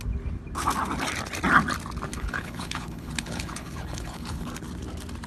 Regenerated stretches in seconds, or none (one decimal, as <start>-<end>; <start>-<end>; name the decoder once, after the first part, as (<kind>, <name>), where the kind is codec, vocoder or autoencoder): 2.1-4.5 (codec, HILCodec)